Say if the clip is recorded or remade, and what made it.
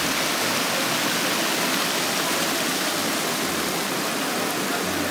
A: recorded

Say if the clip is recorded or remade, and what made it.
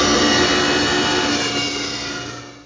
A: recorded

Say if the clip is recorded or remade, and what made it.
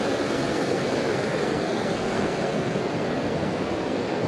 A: remade, codec, SNAC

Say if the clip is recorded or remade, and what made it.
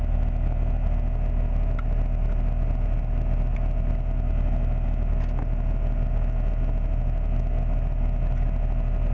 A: recorded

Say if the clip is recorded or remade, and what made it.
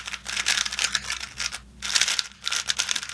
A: recorded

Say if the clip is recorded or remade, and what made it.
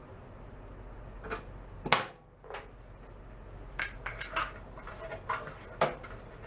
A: recorded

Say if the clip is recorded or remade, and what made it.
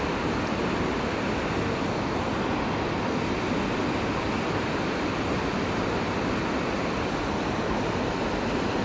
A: recorded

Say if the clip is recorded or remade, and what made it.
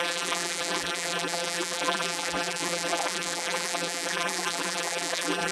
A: remade, vocoder, BigVGAN v2